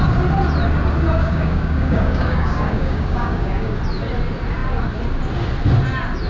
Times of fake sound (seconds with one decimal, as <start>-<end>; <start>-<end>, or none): 1.2-3.8